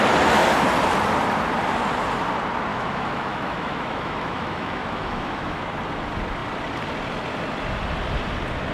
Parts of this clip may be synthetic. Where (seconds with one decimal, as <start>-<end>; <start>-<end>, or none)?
2.7-5.6